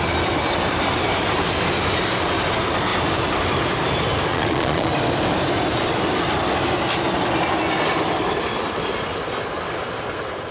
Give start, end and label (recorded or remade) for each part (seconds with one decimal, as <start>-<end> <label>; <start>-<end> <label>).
0.0-4.3 recorded; 4.3-4.9 remade; 4.9-10.5 recorded